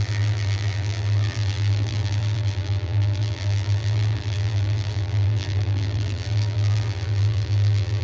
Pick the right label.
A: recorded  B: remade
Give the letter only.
B